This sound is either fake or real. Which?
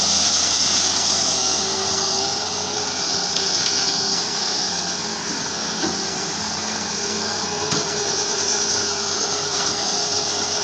fake